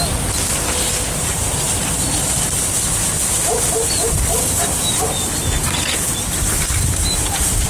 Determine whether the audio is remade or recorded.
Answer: remade